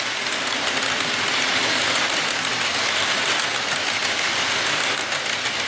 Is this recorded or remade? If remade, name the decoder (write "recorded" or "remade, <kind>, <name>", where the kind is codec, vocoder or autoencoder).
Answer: recorded